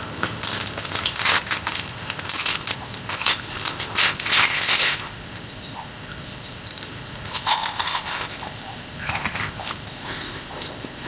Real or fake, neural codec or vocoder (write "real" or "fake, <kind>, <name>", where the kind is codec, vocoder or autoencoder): fake, codec, ZipCodec